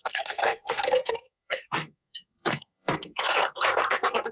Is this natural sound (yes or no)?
no